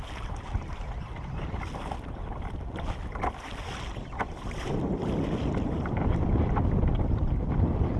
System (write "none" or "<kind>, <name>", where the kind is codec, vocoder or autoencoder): none